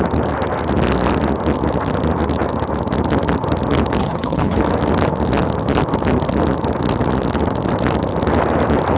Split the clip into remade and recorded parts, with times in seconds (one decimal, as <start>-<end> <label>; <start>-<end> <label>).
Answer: 0.0-4.0 recorded; 4.0-4.6 remade; 4.6-9.0 recorded